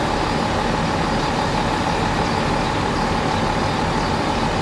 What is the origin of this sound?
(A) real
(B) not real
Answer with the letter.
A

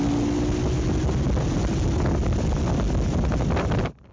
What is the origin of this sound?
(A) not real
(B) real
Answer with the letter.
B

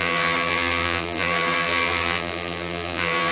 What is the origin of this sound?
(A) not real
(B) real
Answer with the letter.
A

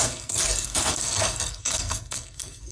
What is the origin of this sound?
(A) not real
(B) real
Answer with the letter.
A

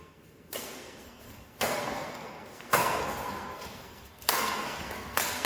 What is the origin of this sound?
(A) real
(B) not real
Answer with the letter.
B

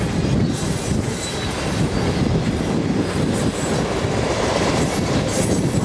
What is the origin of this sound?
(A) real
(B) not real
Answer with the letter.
A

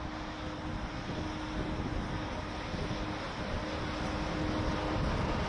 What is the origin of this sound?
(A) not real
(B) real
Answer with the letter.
B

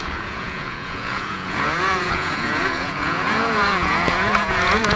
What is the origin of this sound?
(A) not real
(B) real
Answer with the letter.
A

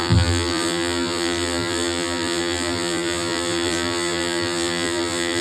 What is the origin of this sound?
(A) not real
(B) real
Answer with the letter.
A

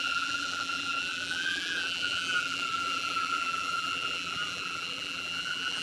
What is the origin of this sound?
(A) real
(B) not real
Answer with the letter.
B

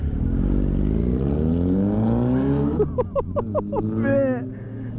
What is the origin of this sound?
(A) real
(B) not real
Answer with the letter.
A